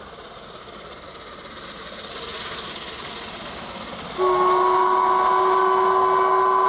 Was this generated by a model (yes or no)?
no